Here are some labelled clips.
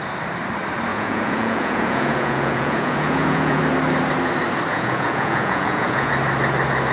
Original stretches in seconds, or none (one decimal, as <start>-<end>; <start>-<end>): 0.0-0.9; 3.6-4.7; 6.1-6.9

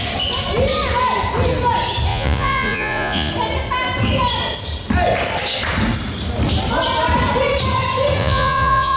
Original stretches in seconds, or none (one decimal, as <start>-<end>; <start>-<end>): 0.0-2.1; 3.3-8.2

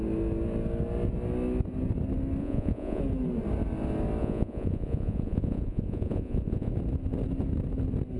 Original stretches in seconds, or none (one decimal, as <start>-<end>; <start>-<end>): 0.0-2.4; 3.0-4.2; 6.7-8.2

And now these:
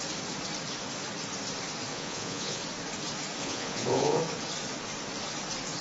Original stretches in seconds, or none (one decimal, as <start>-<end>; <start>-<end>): 0.0-1.9; 2.6-3.4; 4.2-5.8

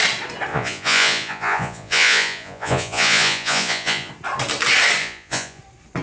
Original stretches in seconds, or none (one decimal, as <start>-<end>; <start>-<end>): 0.0-0.5; 4.1-5.0; 5.6-6.0

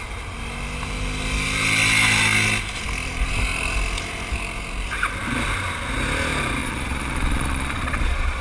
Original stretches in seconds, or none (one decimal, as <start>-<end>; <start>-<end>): 0.0-6.6

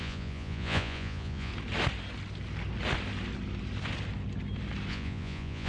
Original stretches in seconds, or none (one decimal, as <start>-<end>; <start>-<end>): 1.5-4.9

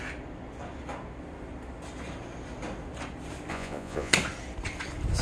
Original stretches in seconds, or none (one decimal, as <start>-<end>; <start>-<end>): 0.0-3.5; 4.1-5.2